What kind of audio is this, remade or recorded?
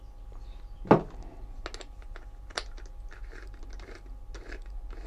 recorded